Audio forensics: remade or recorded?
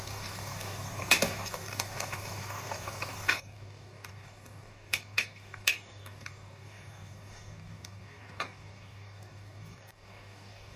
remade